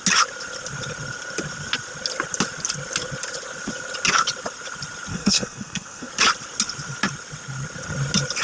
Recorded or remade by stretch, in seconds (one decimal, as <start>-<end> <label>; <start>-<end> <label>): 0.0-5.1 recorded; 5.1-6.1 remade; 6.1-8.4 recorded